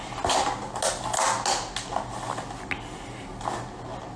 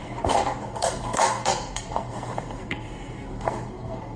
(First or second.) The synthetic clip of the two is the second